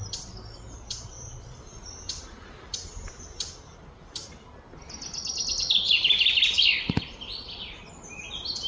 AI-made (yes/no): no